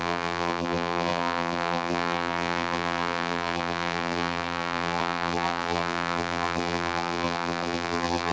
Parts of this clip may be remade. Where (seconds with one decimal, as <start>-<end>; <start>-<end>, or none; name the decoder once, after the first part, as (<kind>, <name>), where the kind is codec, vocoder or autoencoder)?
0.0-8.3 (vocoder, BigVGAN v2)